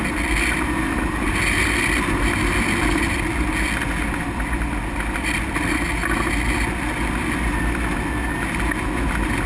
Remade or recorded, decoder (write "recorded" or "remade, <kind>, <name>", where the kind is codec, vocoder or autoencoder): recorded